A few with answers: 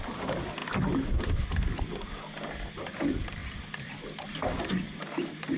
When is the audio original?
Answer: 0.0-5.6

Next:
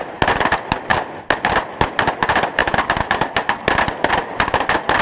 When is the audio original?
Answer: 0.0-5.0

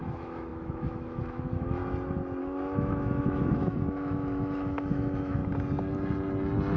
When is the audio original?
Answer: 1.8-2.4; 5.4-6.8

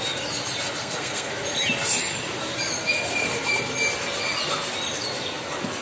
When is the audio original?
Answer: 0.0-0.8; 1.3-5.8